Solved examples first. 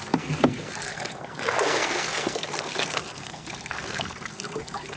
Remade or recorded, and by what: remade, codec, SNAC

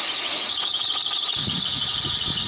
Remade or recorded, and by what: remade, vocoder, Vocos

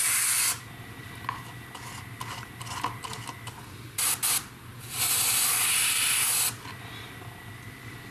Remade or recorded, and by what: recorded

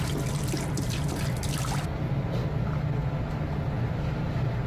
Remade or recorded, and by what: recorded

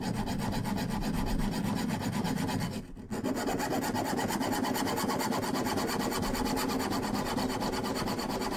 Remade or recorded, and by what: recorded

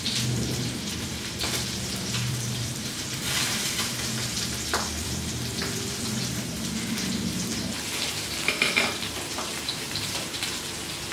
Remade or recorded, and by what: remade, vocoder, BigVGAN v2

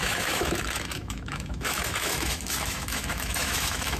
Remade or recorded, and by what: remade, autoencoder, DAC-VAE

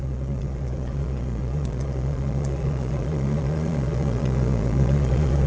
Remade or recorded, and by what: remade, vocoder, Vocos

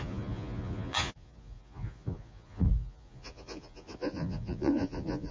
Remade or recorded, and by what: remade, vocoder, Vocos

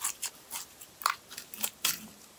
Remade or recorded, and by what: recorded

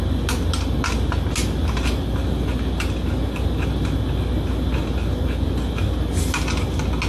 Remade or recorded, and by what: recorded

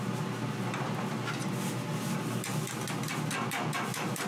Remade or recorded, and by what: recorded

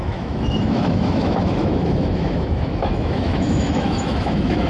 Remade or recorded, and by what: remade, autoencoder, DAC-VAE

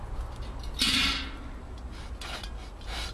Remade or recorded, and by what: recorded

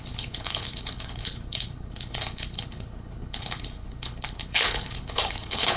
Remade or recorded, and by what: remade, codec, HILCodec